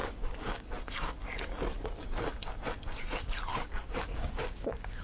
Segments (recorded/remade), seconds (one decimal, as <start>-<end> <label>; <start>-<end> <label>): 0.0-0.8 remade; 0.8-3.5 recorded; 3.5-5.0 remade